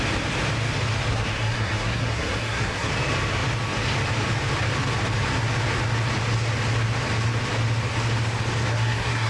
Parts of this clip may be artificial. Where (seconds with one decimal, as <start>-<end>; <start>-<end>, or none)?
1.1-2.9; 8.7-9.3